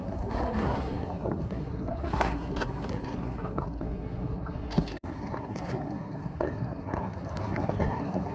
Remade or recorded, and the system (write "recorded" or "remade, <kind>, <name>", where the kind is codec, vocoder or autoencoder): remade, codec, SNAC